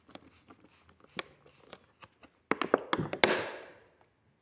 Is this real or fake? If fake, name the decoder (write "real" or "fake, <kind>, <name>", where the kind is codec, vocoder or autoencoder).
real